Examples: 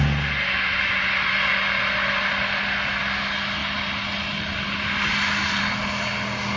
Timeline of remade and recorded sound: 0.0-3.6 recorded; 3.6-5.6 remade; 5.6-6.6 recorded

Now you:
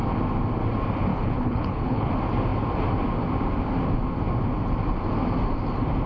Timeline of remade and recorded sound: 0.0-1.1 recorded; 1.1-2.1 remade; 2.1-6.1 recorded

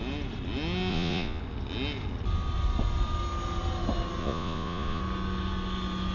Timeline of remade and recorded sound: 0.0-0.9 recorded; 0.9-1.4 remade; 1.4-4.2 recorded; 4.2-5.0 remade; 5.0-6.1 recorded

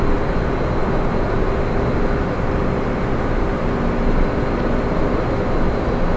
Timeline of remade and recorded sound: 0.0-6.2 recorded

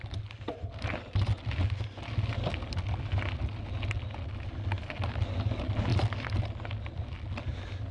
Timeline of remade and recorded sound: 0.0-7.9 recorded

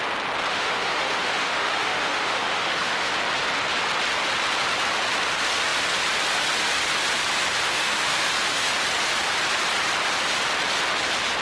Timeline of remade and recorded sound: 0.0-0.5 recorded; 0.5-3.1 remade; 3.1-7.7 recorded; 7.7-8.3 remade; 8.3-11.4 recorded

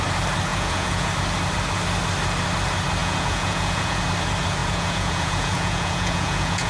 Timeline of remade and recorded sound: 0.0-0.5 recorded; 0.5-1.1 remade; 1.1-3.0 recorded; 3.0-4.0 remade; 4.0-4.6 recorded; 4.6-6.7 remade

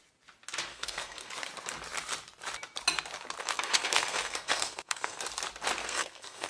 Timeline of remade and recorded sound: 0.0-0.7 recorded; 0.7-1.3 remade; 1.3-3.4 recorded; 3.4-5.2 remade; 5.2-5.8 recorded; 5.8-6.5 remade